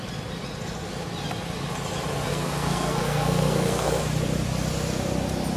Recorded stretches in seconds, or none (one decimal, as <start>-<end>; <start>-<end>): 0.0-2.3; 4.0-5.6